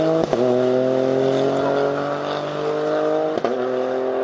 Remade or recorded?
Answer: recorded